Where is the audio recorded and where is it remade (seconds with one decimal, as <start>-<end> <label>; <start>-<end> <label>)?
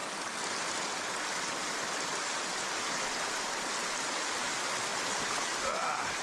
0.0-0.7 remade; 0.7-2.5 recorded; 2.5-3.3 remade; 3.3-6.2 recorded